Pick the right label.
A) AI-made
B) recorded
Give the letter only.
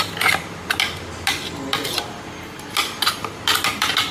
B